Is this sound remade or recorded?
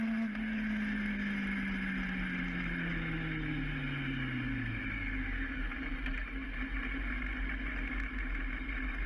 recorded